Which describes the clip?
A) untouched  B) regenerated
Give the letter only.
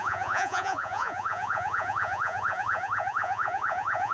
B